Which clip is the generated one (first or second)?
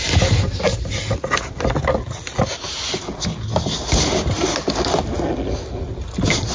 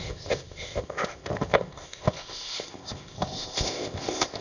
second